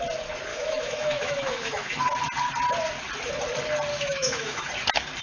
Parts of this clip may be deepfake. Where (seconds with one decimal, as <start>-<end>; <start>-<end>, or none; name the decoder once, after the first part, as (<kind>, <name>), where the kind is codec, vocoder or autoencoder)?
0.5-2.0 (autoencoder, DAC-VAE); 3.9-4.7